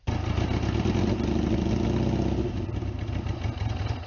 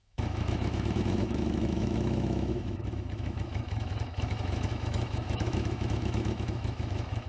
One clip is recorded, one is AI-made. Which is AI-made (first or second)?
second